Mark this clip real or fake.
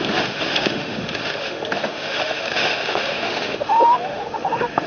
fake